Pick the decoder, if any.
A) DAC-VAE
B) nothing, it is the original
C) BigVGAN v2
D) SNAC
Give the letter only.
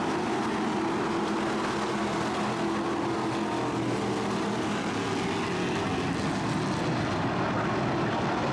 B